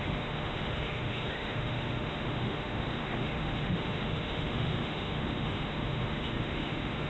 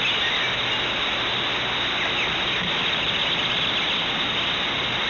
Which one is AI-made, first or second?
first